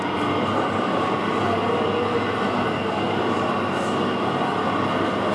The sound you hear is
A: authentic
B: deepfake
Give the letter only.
A